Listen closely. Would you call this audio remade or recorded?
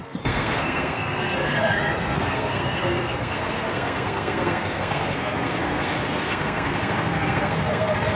remade